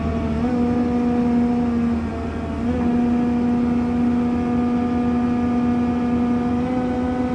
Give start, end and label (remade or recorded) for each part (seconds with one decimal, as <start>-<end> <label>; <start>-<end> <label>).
0.0-7.3 recorded